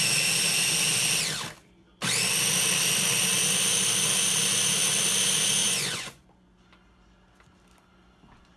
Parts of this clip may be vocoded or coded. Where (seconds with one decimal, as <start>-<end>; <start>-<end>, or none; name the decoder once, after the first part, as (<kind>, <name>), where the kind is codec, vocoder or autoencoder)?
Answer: 5.6-6.2 (vocoder, Vocos)